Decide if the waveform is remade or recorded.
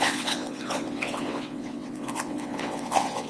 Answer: remade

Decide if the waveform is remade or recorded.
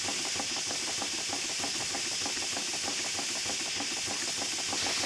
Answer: recorded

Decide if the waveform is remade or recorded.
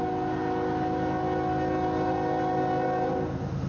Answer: recorded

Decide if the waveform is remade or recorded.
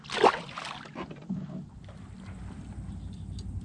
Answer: recorded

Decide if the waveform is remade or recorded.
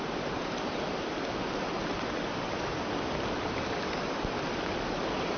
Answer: recorded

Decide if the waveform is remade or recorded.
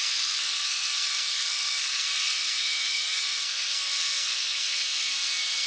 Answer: remade